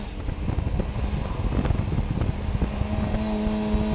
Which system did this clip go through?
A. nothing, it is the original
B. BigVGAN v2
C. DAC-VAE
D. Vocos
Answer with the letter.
A